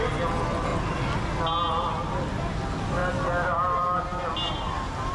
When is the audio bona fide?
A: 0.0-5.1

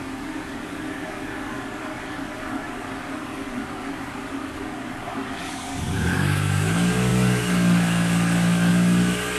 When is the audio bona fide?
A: none

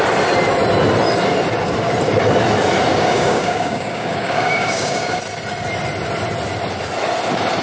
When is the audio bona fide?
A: 0.0-2.9; 5.2-7.6

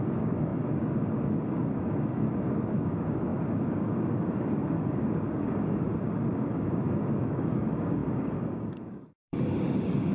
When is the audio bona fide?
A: none

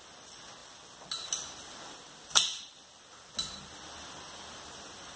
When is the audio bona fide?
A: 0.0-5.2

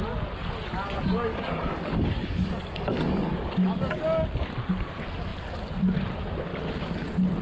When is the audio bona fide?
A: 0.0-1.3; 4.0-7.4

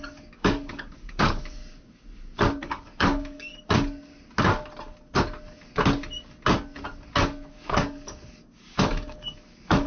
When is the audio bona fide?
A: 1.6-2.6; 3.5-7.5